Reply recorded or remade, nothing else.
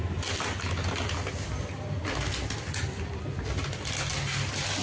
recorded